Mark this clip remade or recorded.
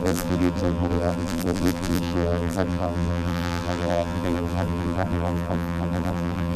remade